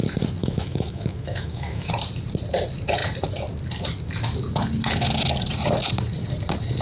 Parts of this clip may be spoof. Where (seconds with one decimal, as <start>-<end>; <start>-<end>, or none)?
0.4-1.9